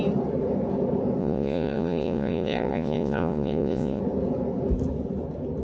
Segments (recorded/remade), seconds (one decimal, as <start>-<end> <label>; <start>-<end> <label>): 0.0-1.2 recorded; 1.2-4.0 remade; 4.0-5.6 recorded